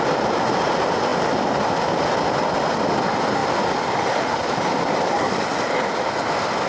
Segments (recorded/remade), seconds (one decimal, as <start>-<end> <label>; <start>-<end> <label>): 0.0-1.1 recorded; 1.1-2.0 remade; 2.0-3.4 recorded; 3.4-6.1 remade; 6.1-6.7 recorded